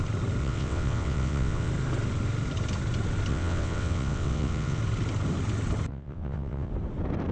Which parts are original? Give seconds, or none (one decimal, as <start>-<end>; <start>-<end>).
0.0-0.4; 1.7-3.3; 4.8-5.9; 6.7-7.3